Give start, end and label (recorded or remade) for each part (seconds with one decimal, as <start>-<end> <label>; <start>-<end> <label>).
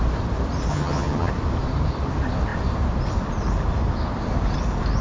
0.0-0.7 recorded; 0.7-1.3 remade; 1.3-5.0 recorded